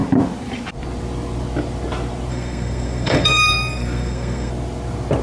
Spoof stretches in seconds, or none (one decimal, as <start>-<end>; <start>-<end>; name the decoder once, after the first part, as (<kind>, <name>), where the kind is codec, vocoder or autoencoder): 2.3-4.5 (codec, SNAC)